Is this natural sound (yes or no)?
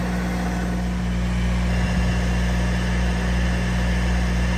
yes